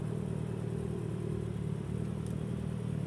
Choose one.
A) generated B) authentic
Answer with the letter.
B